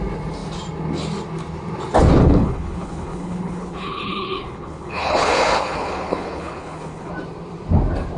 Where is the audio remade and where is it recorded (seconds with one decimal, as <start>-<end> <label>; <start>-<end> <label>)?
0.0-2.2 recorded; 2.2-7.1 remade; 7.1-8.2 recorded

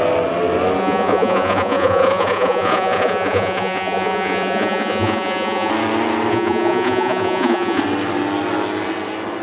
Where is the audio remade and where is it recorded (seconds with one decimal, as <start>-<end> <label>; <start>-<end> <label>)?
0.0-0.8 recorded; 0.8-5.7 remade; 5.7-6.3 recorded; 6.3-7.8 remade; 7.8-9.4 recorded

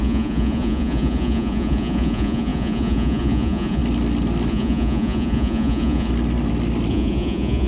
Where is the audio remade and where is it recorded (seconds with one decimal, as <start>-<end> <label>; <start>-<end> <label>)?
0.0-3.8 remade; 3.8-4.5 recorded; 4.5-6.1 remade; 6.1-6.9 recorded; 6.9-7.7 remade

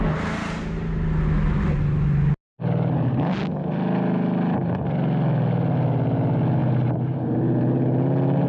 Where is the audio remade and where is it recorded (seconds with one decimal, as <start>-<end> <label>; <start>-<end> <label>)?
0.0-6.6 recorded; 6.6-7.3 remade; 7.3-8.5 recorded

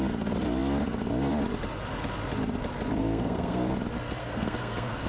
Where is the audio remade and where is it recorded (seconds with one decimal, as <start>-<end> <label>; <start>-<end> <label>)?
0.0-3.0 recorded; 3.0-3.7 remade; 3.7-4.2 recorded; 4.2-5.1 remade

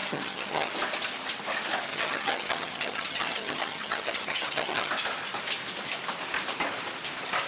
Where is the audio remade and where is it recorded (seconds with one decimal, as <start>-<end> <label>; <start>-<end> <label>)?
0.0-0.7 remade; 0.7-1.9 recorded; 1.9-4.9 remade; 4.9-7.5 recorded

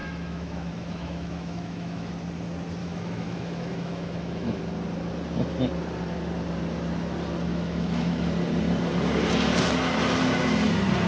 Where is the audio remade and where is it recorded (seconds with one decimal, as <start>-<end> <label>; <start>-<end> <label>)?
0.0-2.1 remade; 2.1-2.8 recorded; 2.8-4.6 remade; 4.6-7.5 recorded; 7.5-8.3 remade; 8.3-11.1 recorded